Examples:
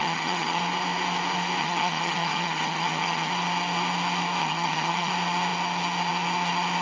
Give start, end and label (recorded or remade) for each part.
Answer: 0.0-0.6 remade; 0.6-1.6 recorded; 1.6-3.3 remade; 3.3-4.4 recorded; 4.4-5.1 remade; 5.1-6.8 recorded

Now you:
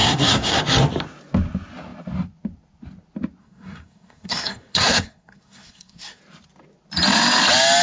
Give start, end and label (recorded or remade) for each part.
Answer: 0.0-0.6 remade; 0.6-3.4 recorded; 3.4-6.2 remade; 6.2-7.8 recorded

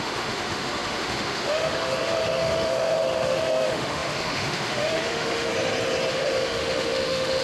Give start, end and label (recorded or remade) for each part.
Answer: 0.0-5.5 remade; 5.5-6.1 recorded; 6.1-7.4 remade

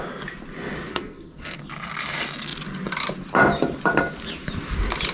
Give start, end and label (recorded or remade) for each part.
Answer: 0.0-0.9 recorded; 0.9-1.6 remade; 1.6-5.1 recorded

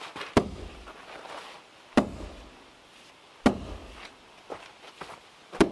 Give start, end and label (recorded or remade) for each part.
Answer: 0.0-5.7 recorded

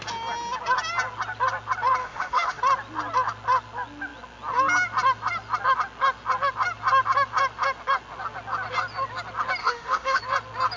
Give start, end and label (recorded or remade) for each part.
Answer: 0.0-2.0 recorded; 2.0-2.6 remade; 2.6-9.6 recorded; 9.6-10.2 remade; 10.2-10.8 recorded

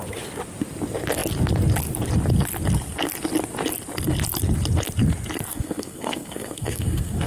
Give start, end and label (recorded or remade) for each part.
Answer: 0.0-5.5 recorded; 5.5-7.3 remade

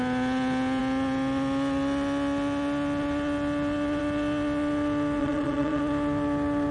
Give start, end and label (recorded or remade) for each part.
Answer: 0.0-5.2 recorded; 5.2-5.8 remade; 5.8-6.7 recorded